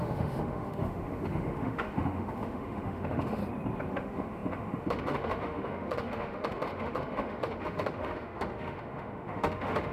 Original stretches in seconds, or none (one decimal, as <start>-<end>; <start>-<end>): 3.4-3.9